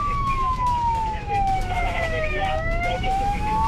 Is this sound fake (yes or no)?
yes